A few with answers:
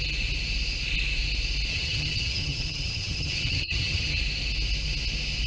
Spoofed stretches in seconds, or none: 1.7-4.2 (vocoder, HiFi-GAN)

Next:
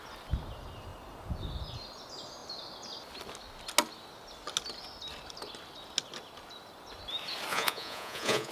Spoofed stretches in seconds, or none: 7.5-8.5 (vocoder, Vocos)

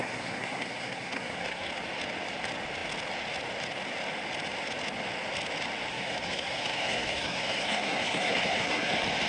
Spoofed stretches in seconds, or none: 0.0-1.7 (codec, SNAC); 5.9-8.9

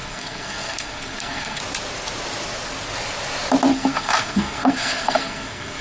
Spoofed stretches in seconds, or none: 0.0-1.6 (codec, SNAC); 3.7-5.8